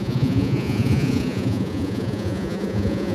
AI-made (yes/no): yes